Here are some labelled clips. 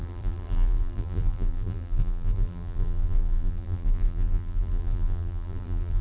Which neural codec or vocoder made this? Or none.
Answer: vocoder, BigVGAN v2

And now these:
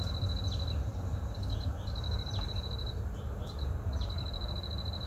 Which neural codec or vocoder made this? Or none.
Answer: vocoder, BigVGAN v2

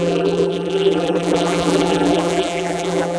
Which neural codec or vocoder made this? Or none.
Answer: vocoder, BigVGAN v2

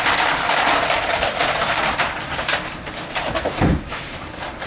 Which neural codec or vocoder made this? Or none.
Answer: vocoder, BigVGAN v2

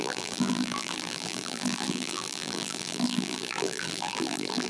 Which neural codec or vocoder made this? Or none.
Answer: vocoder, BigVGAN v2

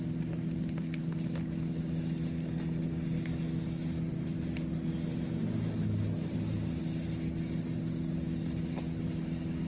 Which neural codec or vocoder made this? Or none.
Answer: none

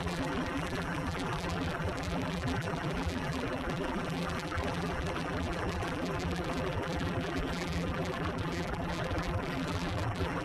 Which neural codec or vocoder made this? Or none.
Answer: vocoder, BigVGAN v2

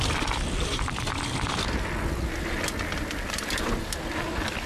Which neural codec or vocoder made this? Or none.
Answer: none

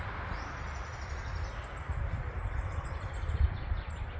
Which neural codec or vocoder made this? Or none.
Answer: vocoder, BigVGAN v2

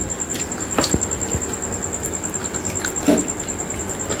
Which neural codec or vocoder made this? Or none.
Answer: none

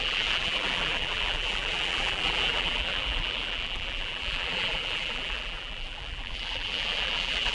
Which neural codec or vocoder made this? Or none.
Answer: vocoder, BigVGAN v2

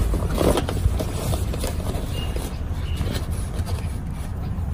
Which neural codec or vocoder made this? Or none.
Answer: vocoder, BigVGAN v2